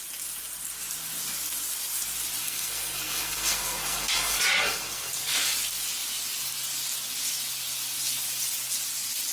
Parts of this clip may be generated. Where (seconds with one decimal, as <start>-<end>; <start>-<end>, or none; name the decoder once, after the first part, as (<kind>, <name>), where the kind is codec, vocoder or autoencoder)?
2.4-5.5 (codec, SNAC)